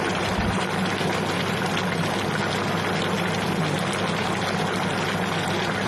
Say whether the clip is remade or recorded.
recorded